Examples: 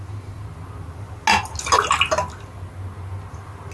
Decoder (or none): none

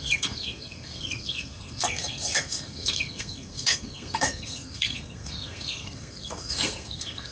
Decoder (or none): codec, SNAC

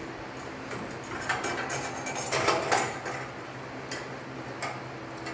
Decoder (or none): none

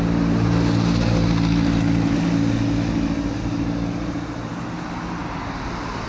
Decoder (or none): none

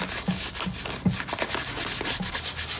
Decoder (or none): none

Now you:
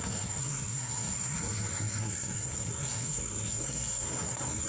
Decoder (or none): codec, SNAC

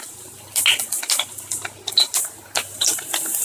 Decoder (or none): none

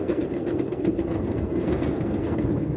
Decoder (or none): codec, SNAC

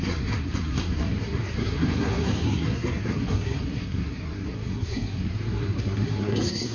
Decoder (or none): codec, SNAC